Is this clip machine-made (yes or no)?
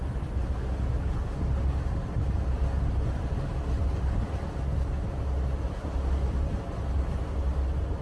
no